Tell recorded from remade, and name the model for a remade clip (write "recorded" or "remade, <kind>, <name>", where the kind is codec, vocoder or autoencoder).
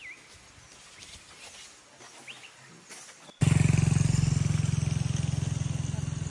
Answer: recorded